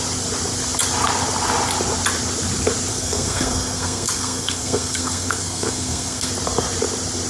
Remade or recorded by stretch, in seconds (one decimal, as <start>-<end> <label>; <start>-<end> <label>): 0.0-2.9 recorded; 2.9-6.3 remade; 6.3-7.3 recorded